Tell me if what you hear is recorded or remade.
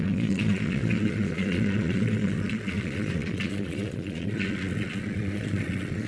remade